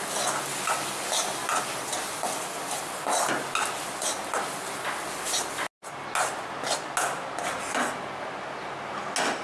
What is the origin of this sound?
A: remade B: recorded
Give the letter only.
B